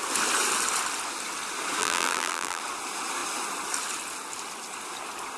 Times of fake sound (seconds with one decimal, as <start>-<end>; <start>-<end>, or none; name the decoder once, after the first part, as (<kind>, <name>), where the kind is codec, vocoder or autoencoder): 1.8-2.6 (vocoder, BigVGAN v2)